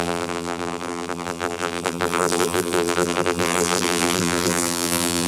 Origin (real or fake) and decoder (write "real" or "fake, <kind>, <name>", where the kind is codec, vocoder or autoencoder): fake, vocoder, BigVGAN v2